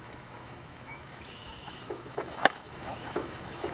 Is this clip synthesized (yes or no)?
yes